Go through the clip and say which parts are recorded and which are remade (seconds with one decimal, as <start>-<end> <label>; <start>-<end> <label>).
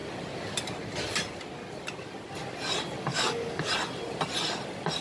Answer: 0.0-3.1 recorded; 3.1-3.7 remade; 3.7-5.0 recorded